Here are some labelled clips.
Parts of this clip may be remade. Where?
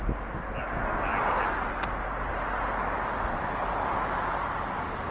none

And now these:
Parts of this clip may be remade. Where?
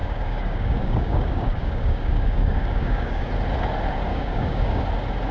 0.0-3.2 (codec, DAC); 4.1-4.8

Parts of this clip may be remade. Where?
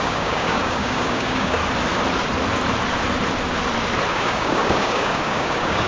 0.0-1.6 (codec, DAC); 4.1-5.9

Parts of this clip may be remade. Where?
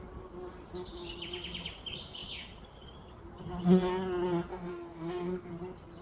4.5-5.5 (codec, DAC)